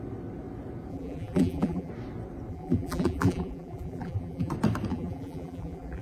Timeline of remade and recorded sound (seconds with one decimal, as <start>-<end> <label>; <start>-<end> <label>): 0.0-0.9 recorded; 0.9-1.9 remade; 1.9-2.5 recorded; 2.5-4.5 remade; 4.5-4.9 recorded; 4.9-6.0 remade